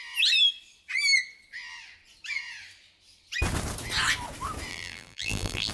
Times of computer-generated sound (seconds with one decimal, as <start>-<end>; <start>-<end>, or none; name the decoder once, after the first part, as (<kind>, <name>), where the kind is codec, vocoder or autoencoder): 4.7-5.7 (vocoder, BigVGAN v2)